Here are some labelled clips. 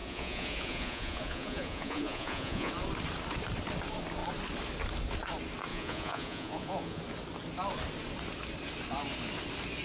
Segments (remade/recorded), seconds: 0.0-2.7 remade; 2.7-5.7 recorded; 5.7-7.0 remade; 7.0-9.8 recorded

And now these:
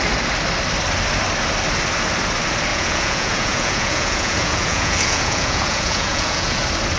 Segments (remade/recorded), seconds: 0.0-2.7 recorded; 2.7-6.6 remade; 6.6-7.0 recorded

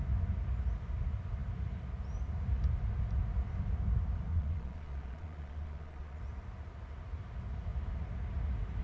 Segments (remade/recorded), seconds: 0.0-4.3 recorded; 4.3-6.2 remade; 6.2-8.8 recorded

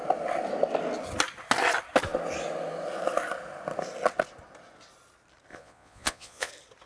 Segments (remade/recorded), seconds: 0.0-5.5 recorded; 5.5-6.5 remade; 6.5-6.9 recorded

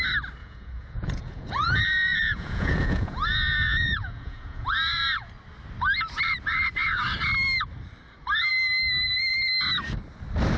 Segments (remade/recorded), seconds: 0.0-0.4 recorded; 0.4-5.3 remade; 5.3-10.6 recorded

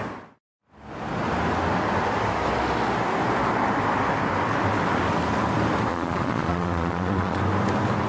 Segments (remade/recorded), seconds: 0.0-5.9 recorded; 5.9-7.4 remade; 7.4-8.1 recorded

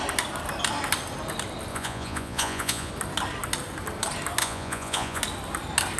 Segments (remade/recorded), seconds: 0.0-1.7 recorded; 1.7-2.9 remade; 2.9-4.4 recorded; 4.4-5.2 remade; 5.2-6.0 recorded

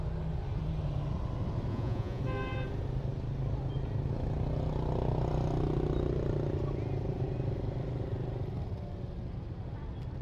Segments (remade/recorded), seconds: 0.0-1.7 recorded; 1.7-2.2 remade; 2.2-10.2 recorded